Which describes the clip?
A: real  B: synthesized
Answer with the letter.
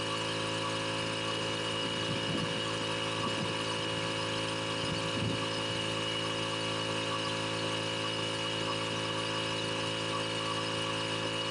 A